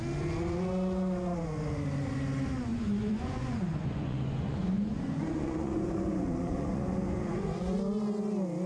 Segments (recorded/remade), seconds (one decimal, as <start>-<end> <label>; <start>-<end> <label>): 0.0-2.7 recorded; 2.7-7.8 remade; 7.8-8.7 recorded